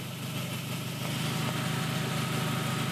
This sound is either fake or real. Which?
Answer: real